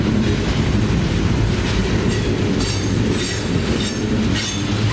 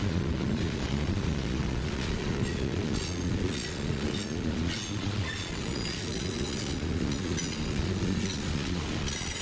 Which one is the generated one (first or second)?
second